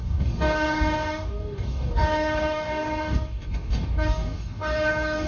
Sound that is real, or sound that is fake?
fake